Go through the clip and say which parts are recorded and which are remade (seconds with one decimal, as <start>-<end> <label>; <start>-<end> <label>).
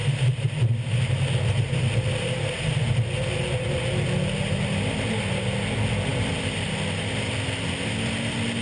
0.0-8.6 recorded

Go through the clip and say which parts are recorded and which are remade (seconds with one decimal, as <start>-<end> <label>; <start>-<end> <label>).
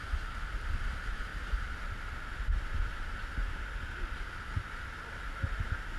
0.0-6.0 recorded